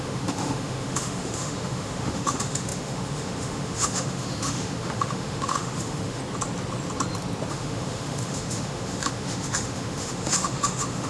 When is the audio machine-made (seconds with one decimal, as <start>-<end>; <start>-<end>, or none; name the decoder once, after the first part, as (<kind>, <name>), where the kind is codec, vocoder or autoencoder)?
0.0-6.2 (autoencoder, DAC-VAE); 7.5-11.1